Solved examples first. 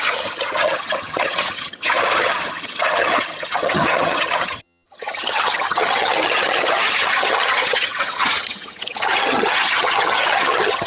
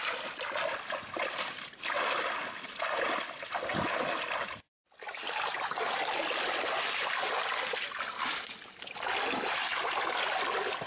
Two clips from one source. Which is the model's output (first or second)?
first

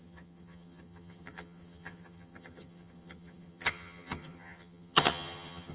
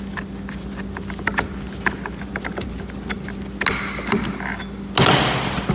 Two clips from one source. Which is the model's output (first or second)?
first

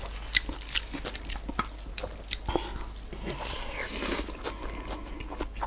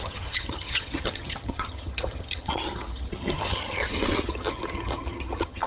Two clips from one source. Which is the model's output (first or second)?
second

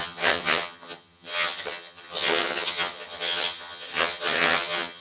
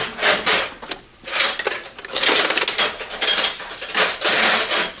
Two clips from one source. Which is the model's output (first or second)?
first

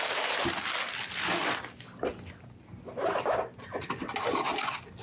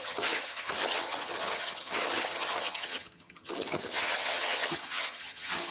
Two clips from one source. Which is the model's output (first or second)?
second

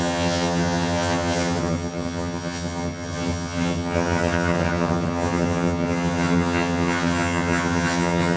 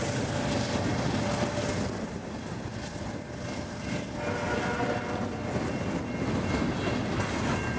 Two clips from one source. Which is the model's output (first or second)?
first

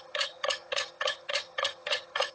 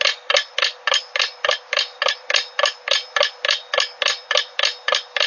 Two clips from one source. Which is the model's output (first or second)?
first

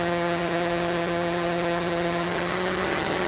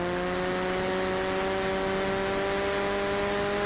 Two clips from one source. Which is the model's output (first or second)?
first